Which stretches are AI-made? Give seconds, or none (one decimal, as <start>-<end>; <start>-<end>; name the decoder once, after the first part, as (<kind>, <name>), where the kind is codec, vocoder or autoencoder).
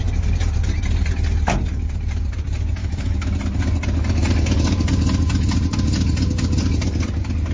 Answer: 2.8-3.4 (autoencoder, DAC-VAE)